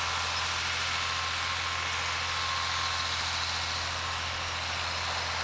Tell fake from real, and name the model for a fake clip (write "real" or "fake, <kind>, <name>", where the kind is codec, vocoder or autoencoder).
real